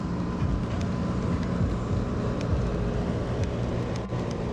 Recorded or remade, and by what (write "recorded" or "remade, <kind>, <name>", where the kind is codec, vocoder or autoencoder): recorded